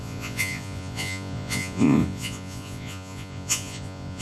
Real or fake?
fake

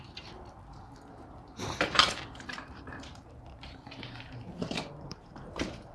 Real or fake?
fake